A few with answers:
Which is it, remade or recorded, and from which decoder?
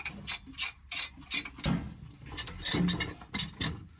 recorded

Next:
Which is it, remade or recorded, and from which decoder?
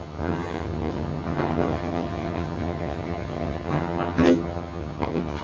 remade, vocoder, HiFi-GAN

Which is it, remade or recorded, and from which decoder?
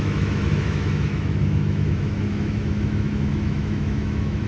remade, autoencoder, DAC-VAE